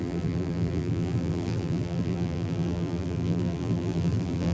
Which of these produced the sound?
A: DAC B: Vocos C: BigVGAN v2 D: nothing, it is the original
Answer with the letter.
C